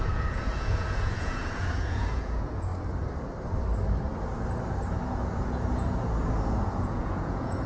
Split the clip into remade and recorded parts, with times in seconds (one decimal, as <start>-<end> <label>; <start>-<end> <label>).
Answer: 0.0-2.7 remade; 2.7-5.0 recorded; 5.0-7.7 remade